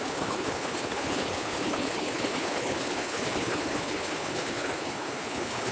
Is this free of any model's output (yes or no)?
no